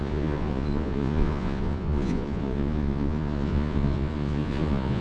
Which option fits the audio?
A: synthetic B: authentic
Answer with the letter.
A